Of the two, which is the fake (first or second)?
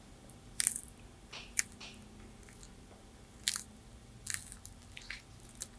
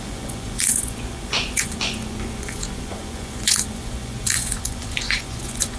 second